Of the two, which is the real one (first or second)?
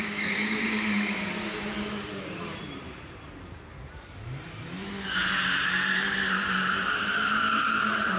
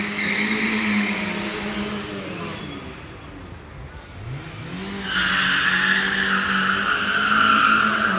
second